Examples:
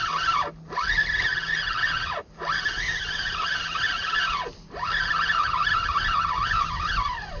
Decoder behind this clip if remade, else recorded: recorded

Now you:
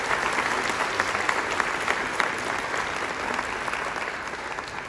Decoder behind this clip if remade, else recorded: recorded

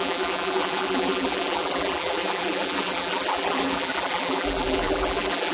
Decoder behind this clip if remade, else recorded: remade, vocoder, BigVGAN v2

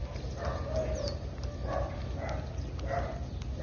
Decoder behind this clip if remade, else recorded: recorded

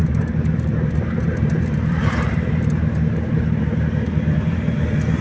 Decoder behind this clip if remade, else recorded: remade, vocoder, BigVGAN v2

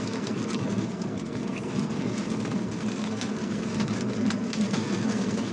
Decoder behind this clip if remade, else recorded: remade, codec, SNAC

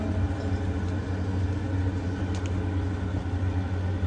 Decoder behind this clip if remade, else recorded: recorded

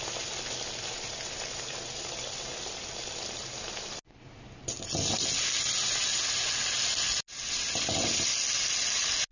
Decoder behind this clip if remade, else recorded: recorded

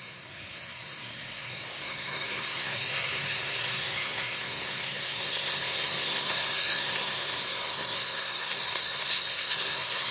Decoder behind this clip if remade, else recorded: remade, codec, SNAC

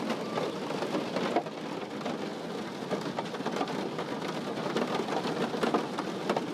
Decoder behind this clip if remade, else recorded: recorded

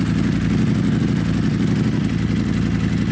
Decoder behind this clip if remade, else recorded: recorded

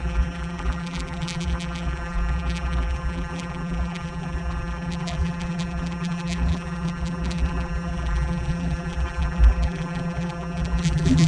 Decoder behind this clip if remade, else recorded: remade, vocoder, BigVGAN v2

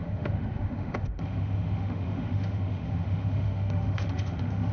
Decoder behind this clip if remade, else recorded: remade, autoencoder, DAC-VAE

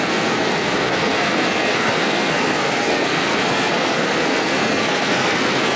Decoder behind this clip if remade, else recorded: remade, codec, SNAC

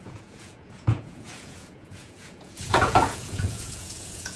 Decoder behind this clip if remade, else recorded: remade, vocoder, Vocos